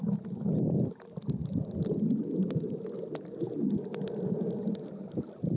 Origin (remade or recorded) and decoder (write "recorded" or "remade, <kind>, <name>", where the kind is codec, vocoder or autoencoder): recorded